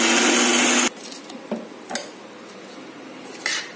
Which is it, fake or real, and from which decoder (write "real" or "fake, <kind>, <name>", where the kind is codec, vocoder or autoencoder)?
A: real